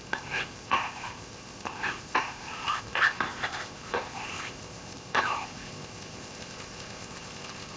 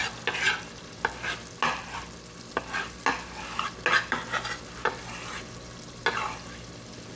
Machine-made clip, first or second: first